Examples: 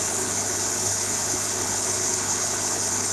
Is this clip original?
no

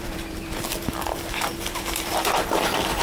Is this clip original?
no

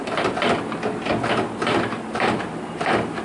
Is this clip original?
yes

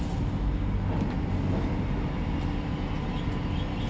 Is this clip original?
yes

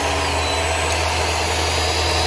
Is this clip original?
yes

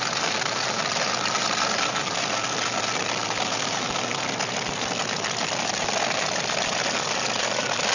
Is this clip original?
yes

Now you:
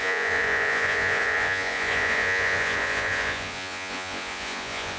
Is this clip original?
no